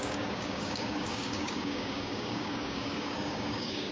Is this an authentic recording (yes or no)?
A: no